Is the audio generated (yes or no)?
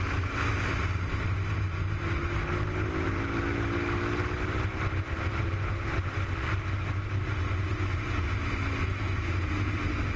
no